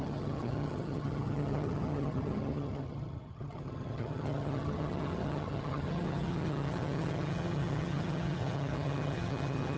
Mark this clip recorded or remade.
remade